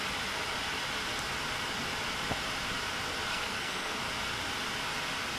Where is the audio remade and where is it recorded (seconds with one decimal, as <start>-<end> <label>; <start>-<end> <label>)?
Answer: 0.0-3.3 recorded; 3.3-4.0 remade; 4.0-5.4 recorded